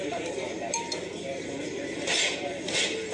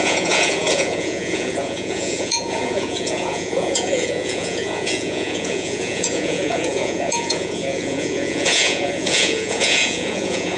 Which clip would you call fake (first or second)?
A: second